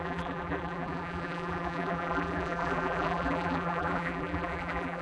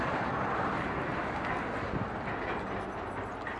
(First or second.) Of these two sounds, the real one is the second